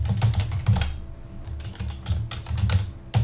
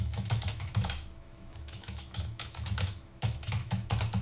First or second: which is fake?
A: second